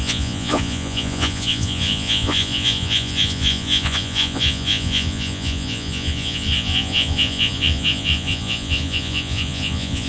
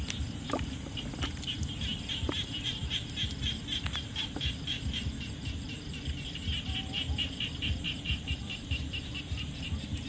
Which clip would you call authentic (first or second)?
second